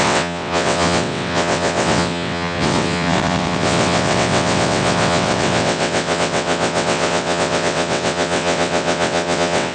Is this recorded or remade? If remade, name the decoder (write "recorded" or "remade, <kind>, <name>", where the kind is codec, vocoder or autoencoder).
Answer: remade, vocoder, WaveNeXt